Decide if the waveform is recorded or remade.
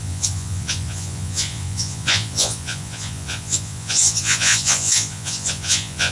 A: remade